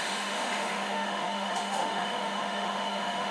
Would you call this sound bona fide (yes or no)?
no